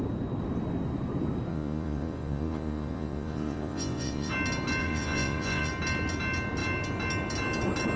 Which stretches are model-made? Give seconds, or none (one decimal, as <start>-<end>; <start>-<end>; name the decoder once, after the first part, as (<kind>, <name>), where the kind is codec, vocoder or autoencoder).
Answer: 1.5-4.3 (vocoder, Vocos); 4.8-5.7